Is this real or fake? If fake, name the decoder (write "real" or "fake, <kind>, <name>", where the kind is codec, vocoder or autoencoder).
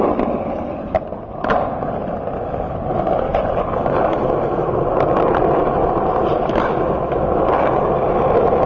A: real